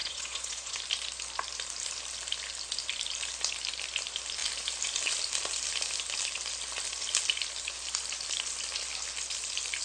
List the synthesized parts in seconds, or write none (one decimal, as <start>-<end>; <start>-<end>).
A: 0.0-0.8